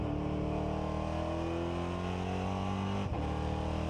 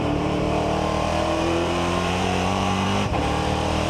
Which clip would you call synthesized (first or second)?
second